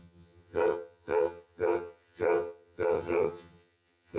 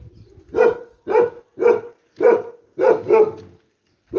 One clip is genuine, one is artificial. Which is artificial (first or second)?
first